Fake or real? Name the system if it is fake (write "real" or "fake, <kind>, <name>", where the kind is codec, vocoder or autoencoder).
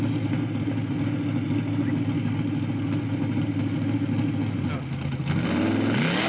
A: real